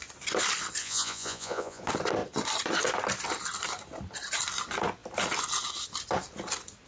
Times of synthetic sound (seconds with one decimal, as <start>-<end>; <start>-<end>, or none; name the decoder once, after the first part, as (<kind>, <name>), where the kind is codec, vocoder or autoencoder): 0.8-1.8 (vocoder, Vocos)